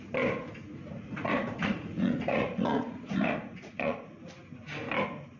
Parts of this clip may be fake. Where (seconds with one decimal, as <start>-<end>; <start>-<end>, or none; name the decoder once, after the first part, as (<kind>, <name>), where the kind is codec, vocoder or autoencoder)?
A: 0.9-4.1 (vocoder, Vocos)